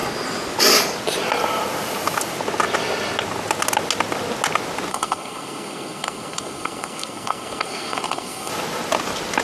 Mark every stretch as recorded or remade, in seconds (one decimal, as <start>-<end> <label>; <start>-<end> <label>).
0.0-4.9 recorded; 4.9-8.5 remade; 8.5-9.4 recorded